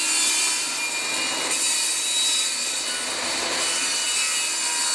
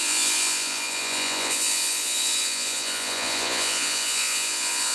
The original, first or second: first